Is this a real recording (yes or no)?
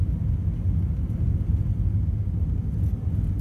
yes